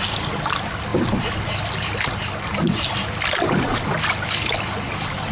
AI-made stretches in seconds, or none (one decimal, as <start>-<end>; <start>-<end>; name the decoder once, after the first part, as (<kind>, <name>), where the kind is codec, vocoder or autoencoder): none